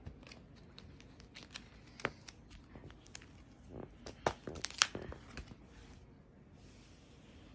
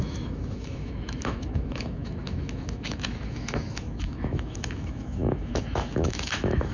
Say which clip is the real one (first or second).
first